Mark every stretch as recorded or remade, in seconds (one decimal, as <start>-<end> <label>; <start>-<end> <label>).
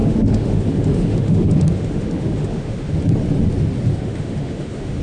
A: 0.0-3.0 remade; 3.0-3.9 recorded; 3.9-5.0 remade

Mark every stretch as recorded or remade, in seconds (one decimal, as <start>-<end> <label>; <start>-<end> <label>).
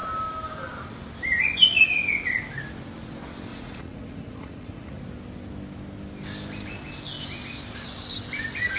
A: 0.0-3.5 recorded; 3.5-5.0 remade; 5.0-8.8 recorded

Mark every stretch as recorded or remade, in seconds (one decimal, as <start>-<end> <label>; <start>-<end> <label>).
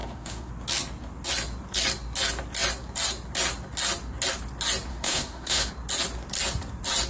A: 0.0-0.5 remade; 0.5-4.9 recorded; 4.9-5.7 remade; 5.7-7.1 recorded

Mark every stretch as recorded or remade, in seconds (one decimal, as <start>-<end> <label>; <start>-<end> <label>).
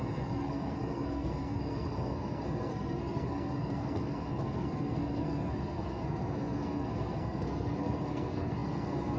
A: 0.0-9.2 remade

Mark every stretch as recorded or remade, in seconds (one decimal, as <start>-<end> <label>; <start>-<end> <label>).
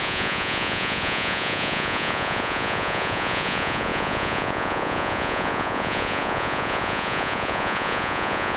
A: 0.0-8.6 remade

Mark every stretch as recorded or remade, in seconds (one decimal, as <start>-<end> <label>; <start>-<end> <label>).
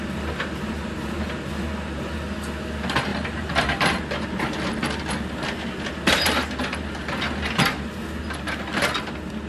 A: 0.0-3.1 recorded; 3.1-4.0 remade; 4.0-9.5 recorded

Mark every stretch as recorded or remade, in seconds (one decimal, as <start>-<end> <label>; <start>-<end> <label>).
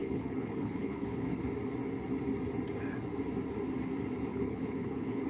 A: 0.0-1.4 remade; 1.4-4.3 recorded; 4.3-5.3 remade